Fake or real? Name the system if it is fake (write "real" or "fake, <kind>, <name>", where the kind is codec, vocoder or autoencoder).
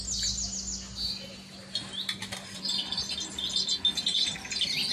real